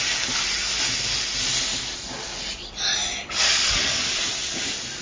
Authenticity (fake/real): real